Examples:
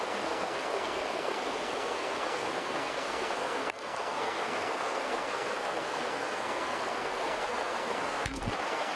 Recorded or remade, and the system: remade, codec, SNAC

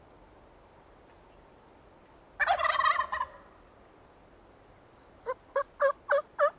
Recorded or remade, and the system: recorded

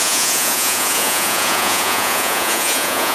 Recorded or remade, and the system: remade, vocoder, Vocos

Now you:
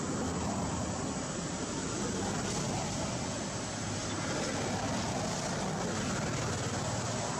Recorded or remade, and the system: recorded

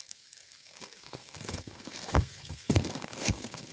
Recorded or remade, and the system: remade, codec, SNAC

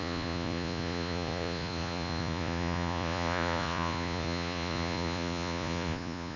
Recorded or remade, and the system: remade, vocoder, Vocos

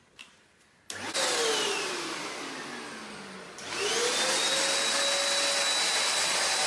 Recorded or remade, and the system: recorded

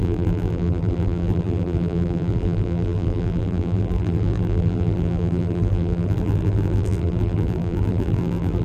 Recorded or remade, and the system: remade, vocoder, BigVGAN v2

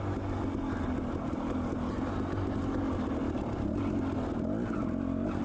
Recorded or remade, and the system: recorded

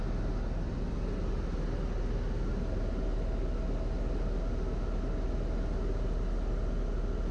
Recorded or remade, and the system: recorded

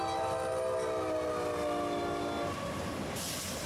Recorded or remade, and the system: recorded